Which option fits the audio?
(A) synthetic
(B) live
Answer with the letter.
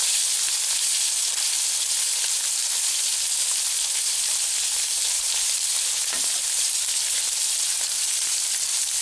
A